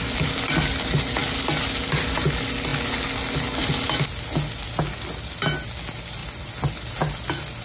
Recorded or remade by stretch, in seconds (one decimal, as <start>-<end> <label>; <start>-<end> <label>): 0.0-7.6 recorded